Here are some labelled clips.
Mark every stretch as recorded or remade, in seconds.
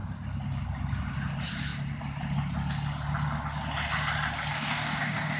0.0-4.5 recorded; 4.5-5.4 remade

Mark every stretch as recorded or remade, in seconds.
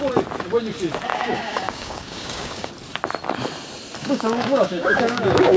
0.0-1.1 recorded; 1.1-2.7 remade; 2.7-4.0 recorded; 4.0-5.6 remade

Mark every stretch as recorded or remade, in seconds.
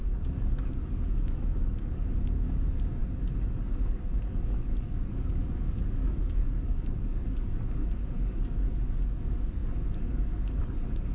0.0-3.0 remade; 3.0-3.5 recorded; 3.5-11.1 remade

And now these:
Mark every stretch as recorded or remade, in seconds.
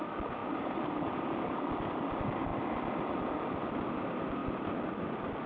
0.0-5.5 recorded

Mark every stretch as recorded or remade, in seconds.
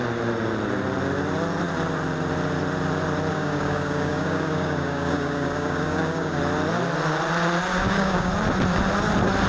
0.0-3.3 recorded; 3.3-6.4 remade; 6.4-7.7 recorded; 7.7-8.3 remade; 8.3-9.5 recorded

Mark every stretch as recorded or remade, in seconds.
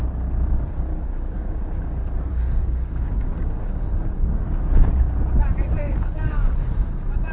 0.0-0.9 recorded; 0.9-1.6 remade; 1.6-2.3 recorded; 2.3-4.6 remade; 4.6-5.8 recorded; 5.8-6.5 remade; 6.5-7.3 recorded